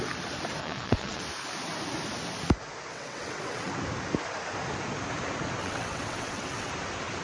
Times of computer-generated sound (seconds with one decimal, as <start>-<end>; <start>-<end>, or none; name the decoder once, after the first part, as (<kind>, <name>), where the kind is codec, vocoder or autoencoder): 0.6-1.2 (vocoder, WaveNeXt); 2.9-3.7; 5.6-6.7